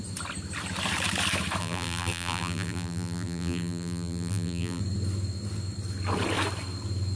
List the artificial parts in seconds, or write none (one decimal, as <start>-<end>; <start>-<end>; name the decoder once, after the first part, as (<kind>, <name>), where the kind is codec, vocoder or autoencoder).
1.6-4.8 (vocoder, BigVGAN v2)

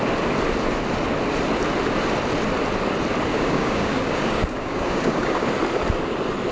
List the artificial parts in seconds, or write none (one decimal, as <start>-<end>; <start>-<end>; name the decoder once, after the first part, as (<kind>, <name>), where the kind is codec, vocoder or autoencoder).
3.3-5.5 (codec, DAC)